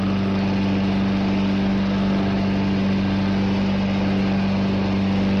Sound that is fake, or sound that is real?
real